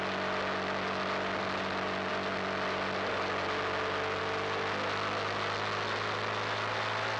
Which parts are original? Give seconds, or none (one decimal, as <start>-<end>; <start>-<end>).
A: 0.0-7.2